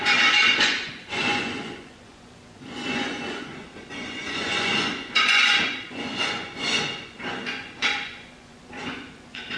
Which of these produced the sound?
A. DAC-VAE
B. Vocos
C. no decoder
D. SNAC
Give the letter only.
B